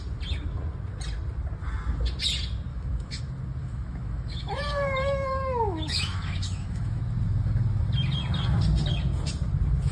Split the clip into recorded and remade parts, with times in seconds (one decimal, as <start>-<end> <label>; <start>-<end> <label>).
0.0-2.7 recorded; 2.7-3.2 remade; 3.2-3.6 recorded; 3.6-7.0 remade; 7.0-9.9 recorded